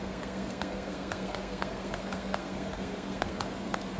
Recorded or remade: remade